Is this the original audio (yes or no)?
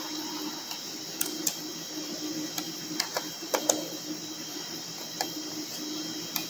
yes